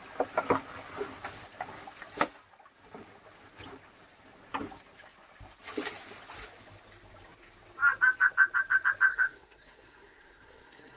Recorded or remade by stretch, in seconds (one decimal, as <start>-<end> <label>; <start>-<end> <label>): 0.0-9.1 recorded; 9.1-11.0 remade